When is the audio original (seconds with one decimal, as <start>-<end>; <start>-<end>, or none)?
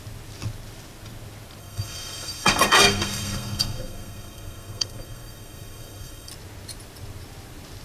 0.0-1.6; 6.3-7.8